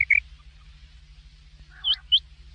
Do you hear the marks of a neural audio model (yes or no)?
no